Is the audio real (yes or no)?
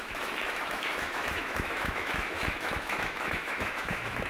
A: no